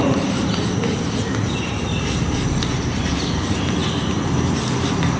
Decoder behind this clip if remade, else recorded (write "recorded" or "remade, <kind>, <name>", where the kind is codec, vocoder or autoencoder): remade, vocoder, BigVGAN v2